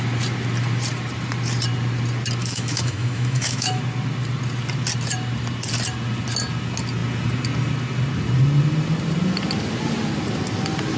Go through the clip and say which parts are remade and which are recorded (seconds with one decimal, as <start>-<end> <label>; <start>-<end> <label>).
0.0-2.4 recorded; 2.4-3.8 remade; 3.8-11.0 recorded